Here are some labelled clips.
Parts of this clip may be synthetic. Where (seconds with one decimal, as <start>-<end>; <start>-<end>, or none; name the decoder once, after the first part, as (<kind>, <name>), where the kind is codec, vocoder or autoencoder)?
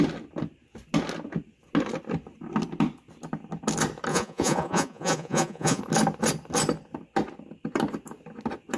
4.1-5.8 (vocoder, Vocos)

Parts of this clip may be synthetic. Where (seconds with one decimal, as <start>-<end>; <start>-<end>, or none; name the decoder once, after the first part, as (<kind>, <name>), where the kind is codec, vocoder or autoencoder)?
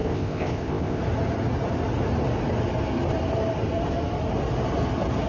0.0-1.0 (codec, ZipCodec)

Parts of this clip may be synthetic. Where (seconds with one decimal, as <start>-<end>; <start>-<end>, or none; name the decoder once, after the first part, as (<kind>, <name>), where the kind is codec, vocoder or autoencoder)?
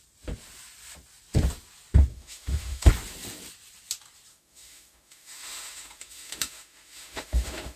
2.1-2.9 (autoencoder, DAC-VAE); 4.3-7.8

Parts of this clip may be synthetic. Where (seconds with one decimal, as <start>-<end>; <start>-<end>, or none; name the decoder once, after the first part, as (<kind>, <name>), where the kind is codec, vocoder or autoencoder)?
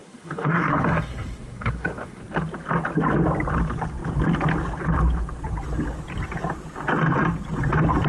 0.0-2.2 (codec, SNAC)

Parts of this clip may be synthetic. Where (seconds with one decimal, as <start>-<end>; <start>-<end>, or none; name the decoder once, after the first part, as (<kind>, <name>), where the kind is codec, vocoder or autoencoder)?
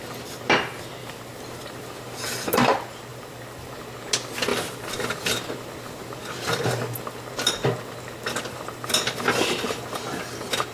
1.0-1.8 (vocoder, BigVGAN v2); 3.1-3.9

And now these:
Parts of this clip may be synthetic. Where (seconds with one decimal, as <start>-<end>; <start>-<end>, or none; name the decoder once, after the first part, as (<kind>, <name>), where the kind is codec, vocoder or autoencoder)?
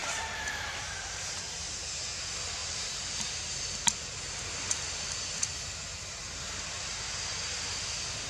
0.0-1.4 (vocoder, BigVGAN v2); 2.6-3.1